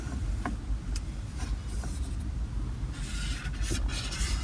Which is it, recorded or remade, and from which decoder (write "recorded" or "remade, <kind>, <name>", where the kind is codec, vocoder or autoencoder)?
recorded